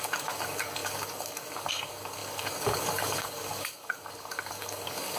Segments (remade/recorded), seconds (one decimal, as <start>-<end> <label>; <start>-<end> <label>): 0.0-5.2 remade